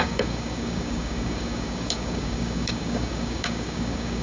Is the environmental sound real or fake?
fake